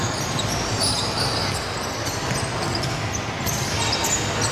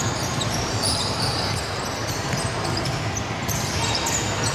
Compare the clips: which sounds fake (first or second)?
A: second